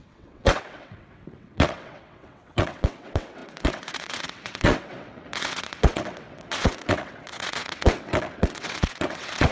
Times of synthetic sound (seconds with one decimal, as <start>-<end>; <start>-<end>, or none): 0.0-9.5